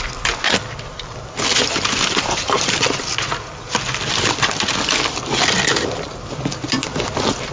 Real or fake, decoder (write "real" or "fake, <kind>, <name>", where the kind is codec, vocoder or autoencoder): real